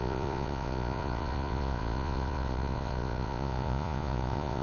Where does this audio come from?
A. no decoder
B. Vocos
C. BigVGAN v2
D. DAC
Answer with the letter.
B